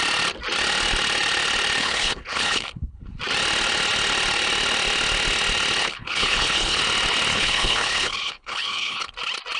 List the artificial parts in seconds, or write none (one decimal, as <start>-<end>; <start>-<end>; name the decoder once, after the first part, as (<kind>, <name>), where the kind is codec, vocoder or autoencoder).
1.8-3.2 (codec, HILCodec); 5.8-6.8; 7.3-9.1

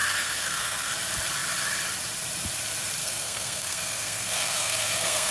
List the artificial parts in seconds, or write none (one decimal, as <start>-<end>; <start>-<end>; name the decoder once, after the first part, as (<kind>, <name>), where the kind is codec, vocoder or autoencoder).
0.0-0.9 (codec, SNAC); 3.0-5.3

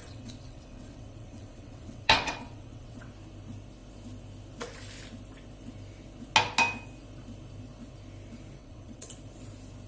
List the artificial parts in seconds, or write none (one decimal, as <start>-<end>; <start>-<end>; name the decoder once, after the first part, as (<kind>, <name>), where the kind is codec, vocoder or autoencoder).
0.0-3.1 (vocoder, WaveNeXt); 8.6-9.1